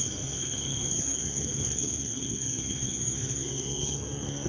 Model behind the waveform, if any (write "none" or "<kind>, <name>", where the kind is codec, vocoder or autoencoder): codec, SNAC